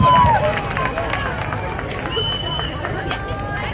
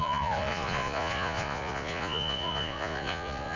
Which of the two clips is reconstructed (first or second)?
second